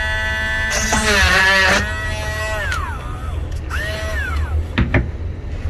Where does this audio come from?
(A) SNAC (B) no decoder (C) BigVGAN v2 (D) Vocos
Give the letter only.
B